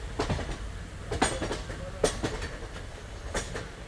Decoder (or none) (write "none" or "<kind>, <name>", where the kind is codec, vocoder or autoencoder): none